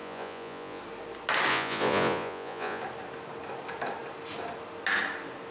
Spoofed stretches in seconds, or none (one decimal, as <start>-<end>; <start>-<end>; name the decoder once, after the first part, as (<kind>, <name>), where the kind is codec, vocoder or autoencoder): 0.0-0.8 (vocoder, Vocos); 1.5-2.8